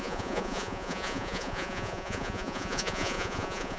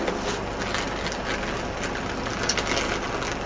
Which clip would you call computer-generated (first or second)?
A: first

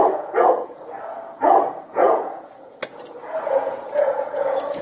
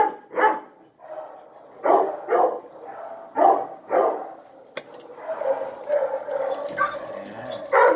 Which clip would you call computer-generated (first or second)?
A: first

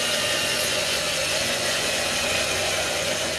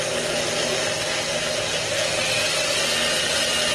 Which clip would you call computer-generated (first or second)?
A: first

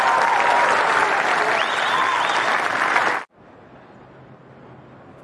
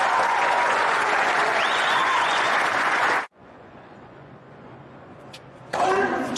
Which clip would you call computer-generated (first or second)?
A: second